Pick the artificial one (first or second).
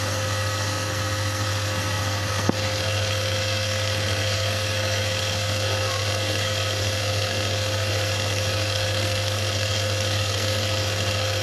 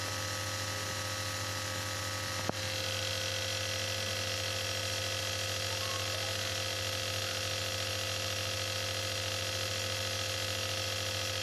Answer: first